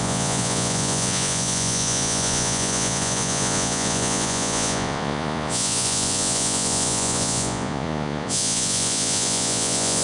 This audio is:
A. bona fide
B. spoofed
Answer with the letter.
B